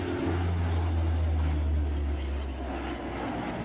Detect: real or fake real